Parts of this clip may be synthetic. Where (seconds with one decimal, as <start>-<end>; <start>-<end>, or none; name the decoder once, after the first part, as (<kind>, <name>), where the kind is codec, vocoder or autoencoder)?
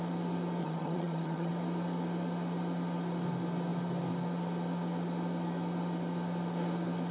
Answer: 0.6-1.5 (vocoder, HiFi-GAN)